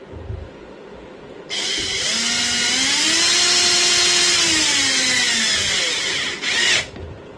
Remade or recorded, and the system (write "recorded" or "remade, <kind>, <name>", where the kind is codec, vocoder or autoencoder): recorded